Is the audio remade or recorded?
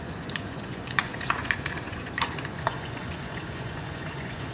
remade